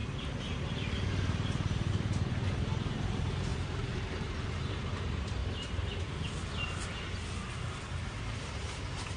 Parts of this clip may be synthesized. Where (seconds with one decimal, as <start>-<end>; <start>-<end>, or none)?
1.9-5.4; 8.2-9.2